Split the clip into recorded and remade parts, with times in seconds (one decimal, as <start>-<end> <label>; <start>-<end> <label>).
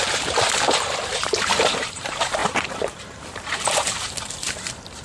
0.0-5.0 remade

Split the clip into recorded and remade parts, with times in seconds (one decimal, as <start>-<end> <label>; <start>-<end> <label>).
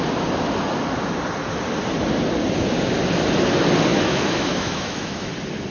0.0-3.9 recorded; 3.9-5.3 remade; 5.3-5.7 recorded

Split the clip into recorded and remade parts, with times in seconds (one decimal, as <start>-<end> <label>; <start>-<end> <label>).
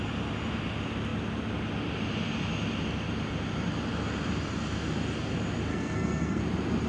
0.0-5.7 recorded; 5.7-6.4 remade; 6.4-6.9 recorded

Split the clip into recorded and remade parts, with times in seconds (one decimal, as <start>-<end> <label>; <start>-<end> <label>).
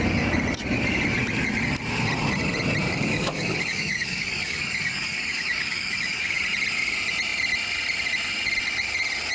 0.0-2.8 recorded; 2.8-6.4 remade; 6.4-9.3 recorded